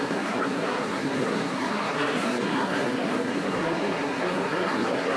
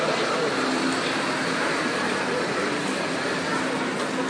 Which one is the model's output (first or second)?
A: first